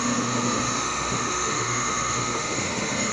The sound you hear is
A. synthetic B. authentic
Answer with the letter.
A